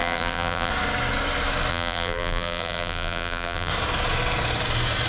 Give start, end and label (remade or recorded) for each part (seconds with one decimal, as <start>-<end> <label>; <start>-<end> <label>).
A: 0.0-0.7 remade; 0.7-1.7 recorded; 1.7-3.7 remade; 3.7-5.1 recorded